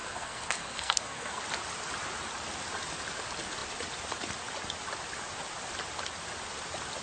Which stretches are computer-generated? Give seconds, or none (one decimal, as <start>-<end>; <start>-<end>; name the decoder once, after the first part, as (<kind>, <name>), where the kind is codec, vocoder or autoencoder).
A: 0.0-1.4 (codec, SNAC)

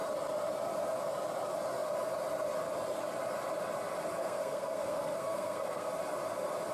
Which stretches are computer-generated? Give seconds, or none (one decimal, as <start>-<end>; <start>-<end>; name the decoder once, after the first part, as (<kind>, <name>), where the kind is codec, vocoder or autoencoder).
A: 4.2-5.9 (codec, SNAC)

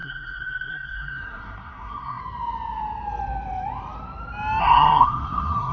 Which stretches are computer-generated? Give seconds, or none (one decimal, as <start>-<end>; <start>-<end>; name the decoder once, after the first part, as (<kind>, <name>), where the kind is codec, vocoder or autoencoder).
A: 0.0-2.2 (codec, SNAC); 4.6-5.7

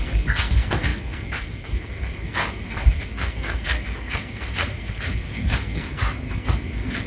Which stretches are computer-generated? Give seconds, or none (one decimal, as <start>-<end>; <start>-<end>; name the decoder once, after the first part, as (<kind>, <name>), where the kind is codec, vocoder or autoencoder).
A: 0.0-7.1 (codec, SNAC)

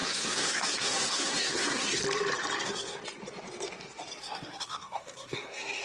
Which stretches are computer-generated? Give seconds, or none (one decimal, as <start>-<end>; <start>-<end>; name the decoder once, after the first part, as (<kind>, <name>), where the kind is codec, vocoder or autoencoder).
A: 0.0-2.0 (codec, SNAC); 2.6-3.0; 4.2-5.8

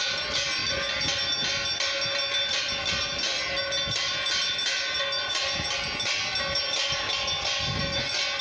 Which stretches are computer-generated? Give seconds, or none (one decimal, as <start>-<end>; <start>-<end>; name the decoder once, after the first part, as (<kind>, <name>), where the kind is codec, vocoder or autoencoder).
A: none

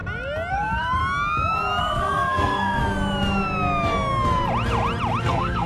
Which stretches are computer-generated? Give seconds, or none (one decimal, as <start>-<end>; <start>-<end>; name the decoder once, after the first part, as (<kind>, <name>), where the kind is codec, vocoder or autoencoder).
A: 0.5-1.0 (codec, SNAC); 1.8-2.8; 5.2-5.7

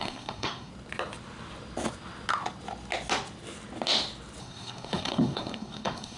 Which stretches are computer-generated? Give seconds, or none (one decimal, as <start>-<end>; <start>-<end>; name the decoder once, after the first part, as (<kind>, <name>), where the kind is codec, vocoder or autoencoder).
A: 0.0-0.7 (codec, SNAC); 4.4-6.2